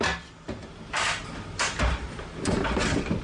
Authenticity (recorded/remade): recorded